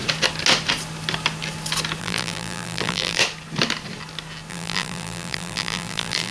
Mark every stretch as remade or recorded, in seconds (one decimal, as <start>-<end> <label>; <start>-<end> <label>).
0.0-2.0 recorded; 2.0-3.2 remade; 3.2-4.5 recorded; 4.5-6.3 remade